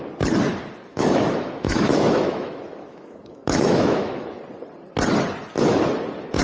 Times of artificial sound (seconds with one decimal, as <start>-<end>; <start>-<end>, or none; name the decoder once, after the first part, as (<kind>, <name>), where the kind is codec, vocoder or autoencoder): 0.9-4.4 (autoencoder, DAC-VAE)